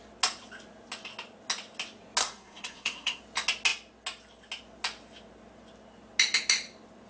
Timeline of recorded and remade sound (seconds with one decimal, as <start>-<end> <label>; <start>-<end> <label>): 0.0-2.2 recorded; 2.2-3.2 remade; 3.2-7.1 recorded